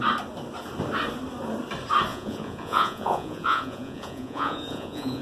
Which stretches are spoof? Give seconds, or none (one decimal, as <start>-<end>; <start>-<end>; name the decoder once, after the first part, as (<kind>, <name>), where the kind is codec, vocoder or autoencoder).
2.1-5.2 (vocoder, Vocos)